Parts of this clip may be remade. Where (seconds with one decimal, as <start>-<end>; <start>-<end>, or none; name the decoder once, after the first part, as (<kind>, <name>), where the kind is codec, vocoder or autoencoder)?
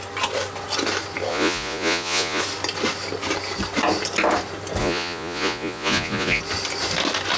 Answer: 1.3-2.4 (vocoder, Vocos); 4.8-6.4